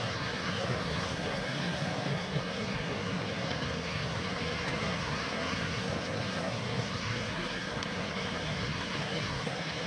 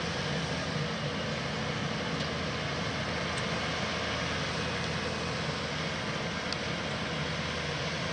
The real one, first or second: second